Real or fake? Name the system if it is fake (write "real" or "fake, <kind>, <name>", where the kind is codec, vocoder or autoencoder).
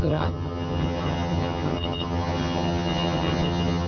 fake, vocoder, HiFi-GAN